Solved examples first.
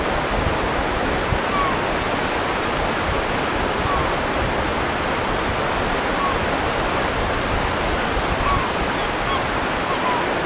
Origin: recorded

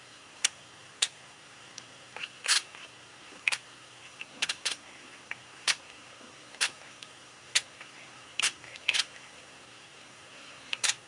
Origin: remade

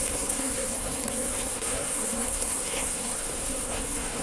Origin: remade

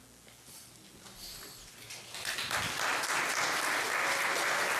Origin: recorded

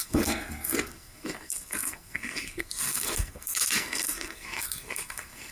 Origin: remade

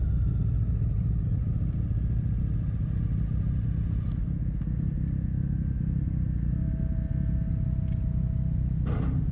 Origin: recorded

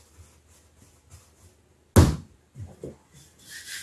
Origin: recorded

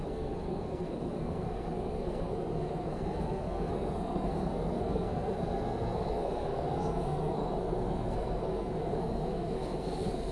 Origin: remade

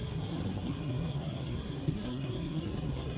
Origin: remade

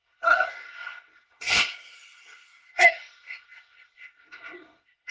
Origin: remade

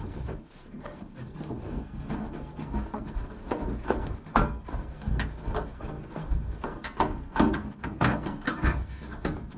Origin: remade